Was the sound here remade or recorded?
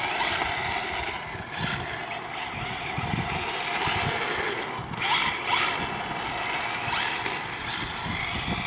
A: recorded